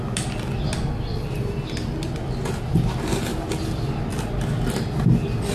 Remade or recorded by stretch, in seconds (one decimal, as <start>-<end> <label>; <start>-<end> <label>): 0.0-5.5 recorded